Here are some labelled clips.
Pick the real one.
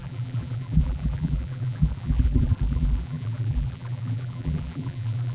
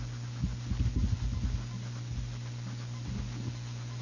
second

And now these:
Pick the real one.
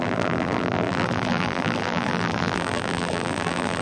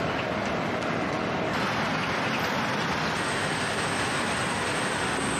second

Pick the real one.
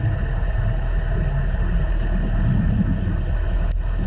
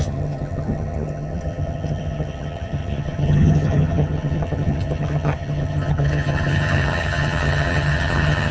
first